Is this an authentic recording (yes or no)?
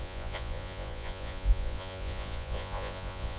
no